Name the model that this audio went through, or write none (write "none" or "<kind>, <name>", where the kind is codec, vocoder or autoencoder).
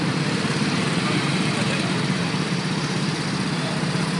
vocoder, BigVGAN v2